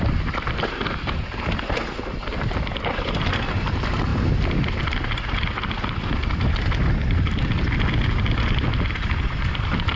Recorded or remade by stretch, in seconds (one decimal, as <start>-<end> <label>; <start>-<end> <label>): 0.0-10.0 recorded